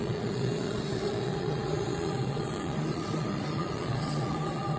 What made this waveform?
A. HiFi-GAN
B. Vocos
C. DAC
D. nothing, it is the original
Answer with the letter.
B